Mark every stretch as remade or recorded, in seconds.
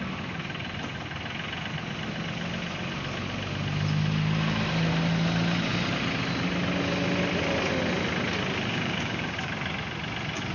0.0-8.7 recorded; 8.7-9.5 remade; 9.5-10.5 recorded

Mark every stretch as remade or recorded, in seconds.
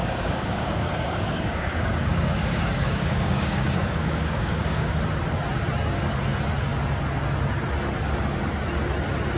0.0-5.0 remade; 5.0-9.4 recorded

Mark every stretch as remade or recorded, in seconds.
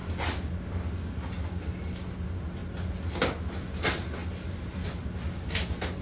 0.0-6.0 recorded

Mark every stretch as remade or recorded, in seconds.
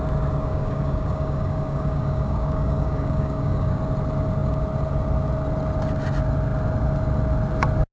0.0-0.5 recorded; 0.5-3.8 remade; 3.8-7.9 recorded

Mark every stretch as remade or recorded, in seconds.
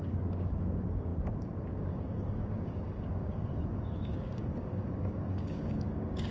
0.0-6.3 remade